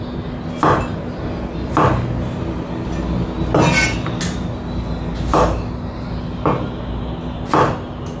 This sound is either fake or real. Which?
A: real